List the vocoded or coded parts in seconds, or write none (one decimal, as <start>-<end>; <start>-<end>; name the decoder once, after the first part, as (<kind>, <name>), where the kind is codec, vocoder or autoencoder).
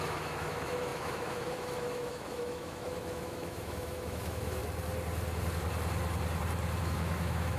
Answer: 0.0-4.6 (autoencoder, DAC-VAE); 6.8-7.6